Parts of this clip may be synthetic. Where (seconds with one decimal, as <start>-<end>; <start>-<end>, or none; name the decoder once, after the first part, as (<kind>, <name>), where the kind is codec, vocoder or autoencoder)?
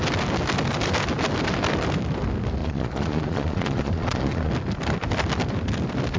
2.6-4.5 (vocoder, Vocos)